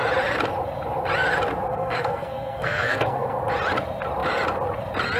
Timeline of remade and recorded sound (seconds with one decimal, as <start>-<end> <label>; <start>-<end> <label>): 0.0-1.7 recorded; 1.7-3.4 remade; 3.4-5.2 recorded